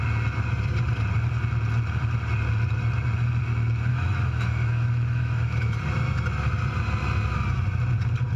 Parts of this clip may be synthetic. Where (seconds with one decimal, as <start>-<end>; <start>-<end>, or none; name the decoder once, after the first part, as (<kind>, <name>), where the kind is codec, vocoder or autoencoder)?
3.9-5.8 (autoencoder, DAC-VAE)